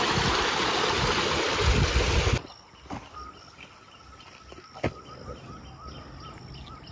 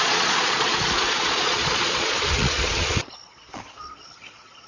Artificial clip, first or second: second